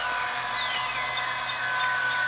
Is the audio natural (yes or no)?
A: yes